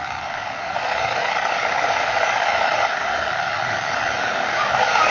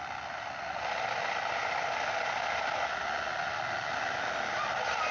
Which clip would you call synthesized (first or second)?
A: first